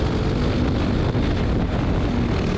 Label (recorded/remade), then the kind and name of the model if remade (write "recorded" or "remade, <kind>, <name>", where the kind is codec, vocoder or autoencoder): recorded